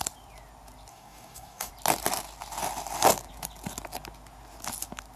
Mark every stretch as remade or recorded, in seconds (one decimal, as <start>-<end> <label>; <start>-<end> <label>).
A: 0.0-0.9 recorded; 0.9-1.7 remade; 1.7-5.2 recorded